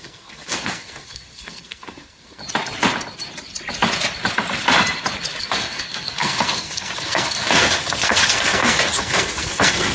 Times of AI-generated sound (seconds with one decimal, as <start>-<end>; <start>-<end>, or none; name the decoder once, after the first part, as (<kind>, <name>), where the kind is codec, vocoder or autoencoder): 0.0-2.4 (codec, SNAC); 5.4-9.9